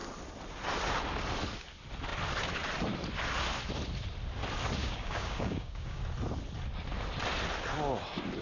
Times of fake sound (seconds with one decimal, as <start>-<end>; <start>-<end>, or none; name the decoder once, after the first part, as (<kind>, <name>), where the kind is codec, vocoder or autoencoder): 4.8-6.0 (codec, DAC)